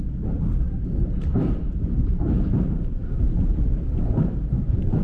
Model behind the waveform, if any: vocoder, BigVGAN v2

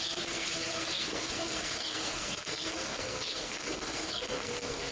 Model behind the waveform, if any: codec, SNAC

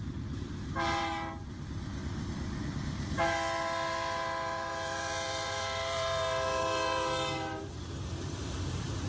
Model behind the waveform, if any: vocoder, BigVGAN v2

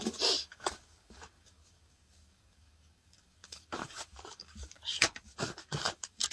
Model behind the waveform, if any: codec, DAC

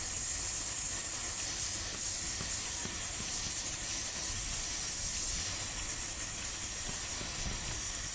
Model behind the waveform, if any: none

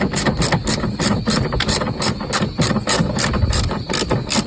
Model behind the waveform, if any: none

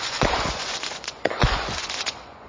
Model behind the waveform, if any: vocoder, Vocos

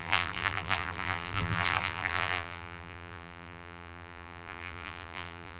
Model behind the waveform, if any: vocoder, BigVGAN v2